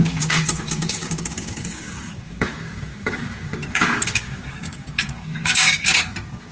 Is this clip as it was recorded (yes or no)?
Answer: no